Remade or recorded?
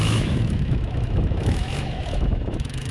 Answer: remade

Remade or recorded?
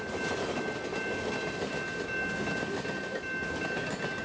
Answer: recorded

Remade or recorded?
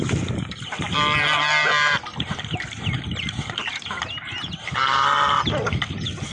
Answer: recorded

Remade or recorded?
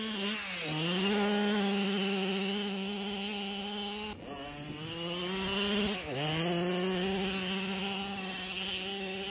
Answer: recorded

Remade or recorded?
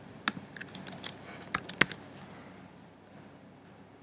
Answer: recorded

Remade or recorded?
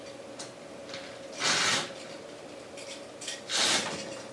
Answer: recorded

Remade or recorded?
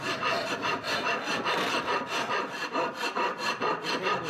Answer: remade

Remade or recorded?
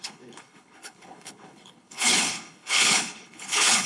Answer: remade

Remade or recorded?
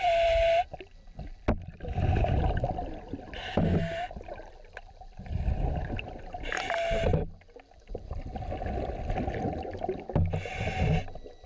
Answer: recorded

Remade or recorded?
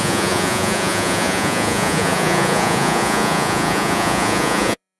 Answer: remade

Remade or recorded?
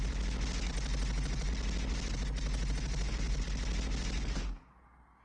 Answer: recorded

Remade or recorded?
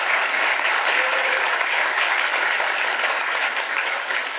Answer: remade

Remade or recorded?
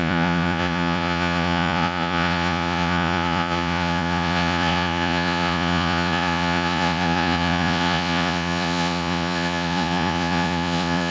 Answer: remade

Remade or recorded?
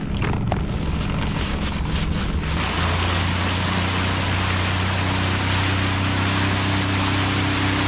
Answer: recorded